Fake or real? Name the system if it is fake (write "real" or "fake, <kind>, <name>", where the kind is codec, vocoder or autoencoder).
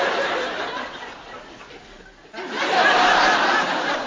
real